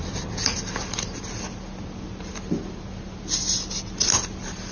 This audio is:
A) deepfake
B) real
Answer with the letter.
B